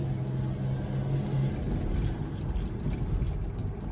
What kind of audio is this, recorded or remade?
recorded